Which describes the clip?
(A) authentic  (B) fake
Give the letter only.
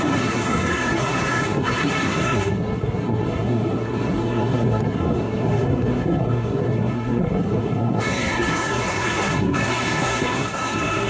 B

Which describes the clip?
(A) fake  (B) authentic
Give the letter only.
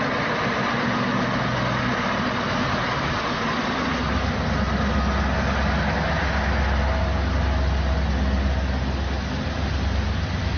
B